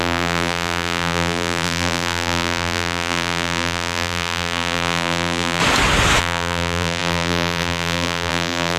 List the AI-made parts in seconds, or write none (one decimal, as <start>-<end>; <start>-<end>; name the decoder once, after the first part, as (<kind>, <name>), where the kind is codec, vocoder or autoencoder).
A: 0.0-5.6 (vocoder, BigVGAN v2); 6.2-8.8